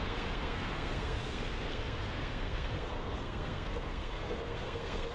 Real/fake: fake